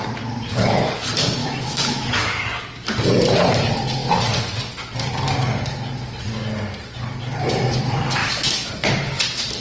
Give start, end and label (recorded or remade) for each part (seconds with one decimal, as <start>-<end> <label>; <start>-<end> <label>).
0.0-1.4 recorded; 1.4-2.5 remade; 2.5-8.2 recorded; 8.2-8.7 remade; 8.7-9.6 recorded